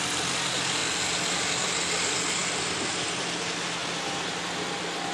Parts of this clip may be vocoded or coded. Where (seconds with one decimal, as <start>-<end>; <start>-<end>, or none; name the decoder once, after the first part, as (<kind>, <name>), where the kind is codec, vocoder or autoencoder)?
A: none